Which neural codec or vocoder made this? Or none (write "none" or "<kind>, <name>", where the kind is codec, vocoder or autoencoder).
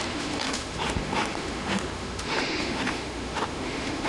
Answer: autoencoder, DAC-VAE